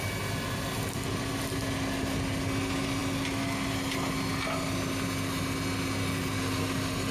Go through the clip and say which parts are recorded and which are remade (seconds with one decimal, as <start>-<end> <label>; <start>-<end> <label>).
0.0-7.1 recorded

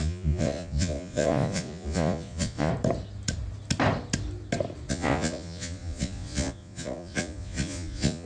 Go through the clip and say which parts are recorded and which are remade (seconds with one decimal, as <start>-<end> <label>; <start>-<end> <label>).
0.0-2.7 remade; 2.7-4.9 recorded; 4.9-8.3 remade

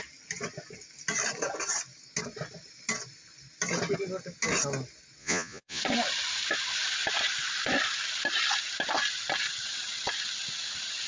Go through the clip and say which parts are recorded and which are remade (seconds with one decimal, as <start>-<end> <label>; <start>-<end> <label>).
0.0-5.2 recorded; 5.2-5.8 remade; 5.8-11.1 recorded

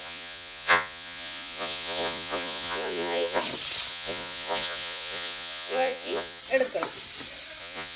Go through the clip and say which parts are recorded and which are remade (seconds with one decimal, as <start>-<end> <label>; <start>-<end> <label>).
0.0-3.4 remade; 3.4-3.9 recorded; 3.9-6.4 remade; 6.4-7.6 recorded; 7.6-8.0 remade

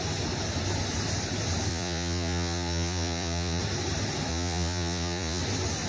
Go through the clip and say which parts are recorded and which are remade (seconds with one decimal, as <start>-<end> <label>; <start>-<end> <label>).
0.0-1.7 recorded; 1.7-3.6 remade; 3.6-4.3 recorded; 4.3-5.4 remade; 5.4-5.9 recorded

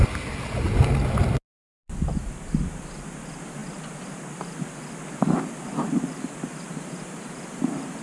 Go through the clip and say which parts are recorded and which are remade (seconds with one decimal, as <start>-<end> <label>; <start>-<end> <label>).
0.0-8.0 recorded

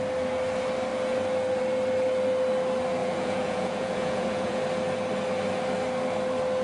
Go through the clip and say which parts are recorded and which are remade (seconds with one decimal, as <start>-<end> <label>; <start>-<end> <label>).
0.0-3.0 recorded; 3.0-4.6 remade; 4.6-6.6 recorded